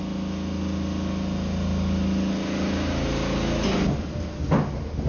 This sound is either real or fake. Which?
real